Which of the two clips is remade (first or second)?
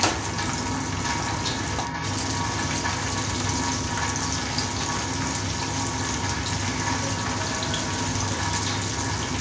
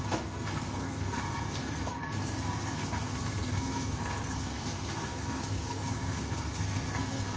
second